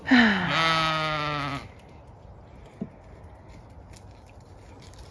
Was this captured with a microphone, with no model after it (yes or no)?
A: yes